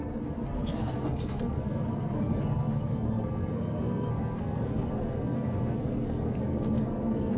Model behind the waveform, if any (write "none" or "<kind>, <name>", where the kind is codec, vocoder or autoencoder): codec, SNAC